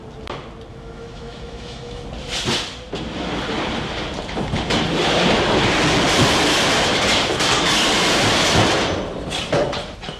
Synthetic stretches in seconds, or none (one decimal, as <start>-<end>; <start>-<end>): 0.7-2.0